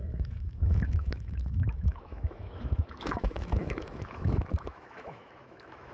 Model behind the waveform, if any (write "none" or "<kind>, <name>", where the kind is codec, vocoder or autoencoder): autoencoder, DAC-VAE